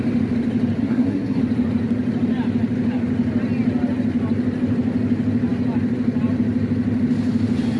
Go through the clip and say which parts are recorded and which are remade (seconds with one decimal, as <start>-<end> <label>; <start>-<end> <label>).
0.0-0.8 recorded; 0.8-1.4 remade; 1.4-7.8 recorded